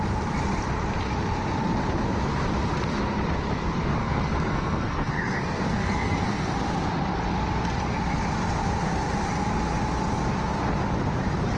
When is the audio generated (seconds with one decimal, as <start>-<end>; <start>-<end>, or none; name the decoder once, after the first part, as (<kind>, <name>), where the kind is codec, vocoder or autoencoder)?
4.0-6.5 (codec, SNAC)